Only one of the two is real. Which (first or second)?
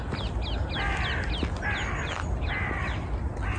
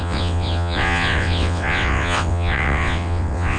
first